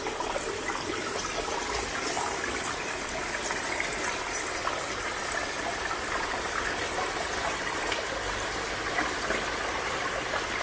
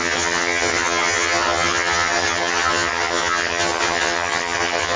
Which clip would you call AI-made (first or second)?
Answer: second